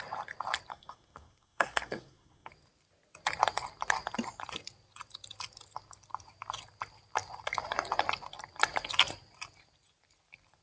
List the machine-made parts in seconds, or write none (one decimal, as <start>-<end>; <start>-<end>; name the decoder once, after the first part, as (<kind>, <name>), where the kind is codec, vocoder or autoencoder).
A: 0.7-2.5 (codec, SNAC)